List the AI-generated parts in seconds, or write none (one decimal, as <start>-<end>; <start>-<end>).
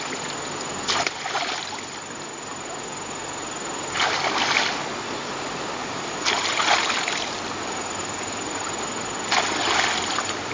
5.8-6.3; 8.0-8.9